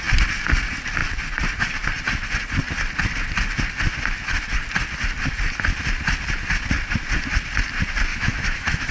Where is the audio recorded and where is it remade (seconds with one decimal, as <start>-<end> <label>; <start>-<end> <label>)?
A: 0.0-8.1 recorded; 8.1-8.9 remade